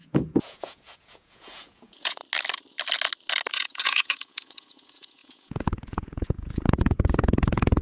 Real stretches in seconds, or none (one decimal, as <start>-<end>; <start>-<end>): 2.2-3.5